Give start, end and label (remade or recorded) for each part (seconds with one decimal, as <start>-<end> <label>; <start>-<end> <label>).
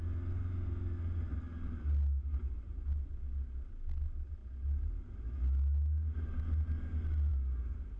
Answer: 0.0-8.0 recorded